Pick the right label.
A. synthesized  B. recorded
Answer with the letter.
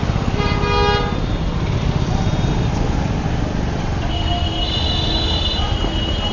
B